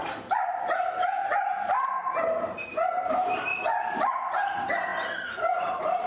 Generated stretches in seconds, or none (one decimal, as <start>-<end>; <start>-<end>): 0.0-3.5; 4.3-6.1